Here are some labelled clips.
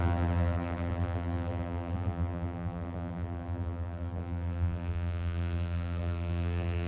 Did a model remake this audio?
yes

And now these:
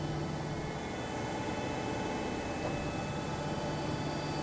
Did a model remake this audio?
no